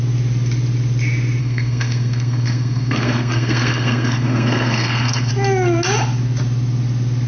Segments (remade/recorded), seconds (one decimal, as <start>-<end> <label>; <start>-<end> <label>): 0.0-1.4 recorded; 1.4-5.3 remade; 5.3-7.3 recorded